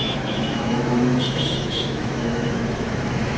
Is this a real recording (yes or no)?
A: no